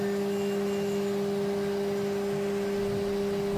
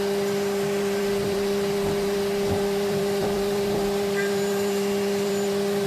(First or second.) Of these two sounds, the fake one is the second